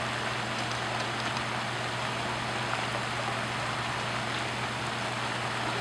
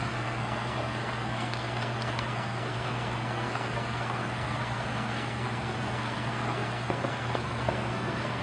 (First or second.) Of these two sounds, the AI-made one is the second